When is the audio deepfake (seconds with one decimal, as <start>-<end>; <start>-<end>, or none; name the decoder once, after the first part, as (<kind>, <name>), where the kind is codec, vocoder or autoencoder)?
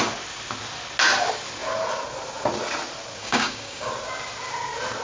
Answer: 3.2-3.9 (codec, DAC)